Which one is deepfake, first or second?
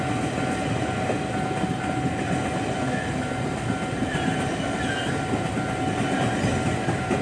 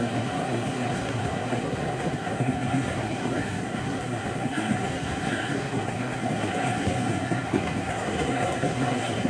second